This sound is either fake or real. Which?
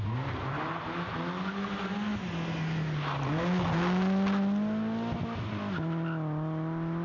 real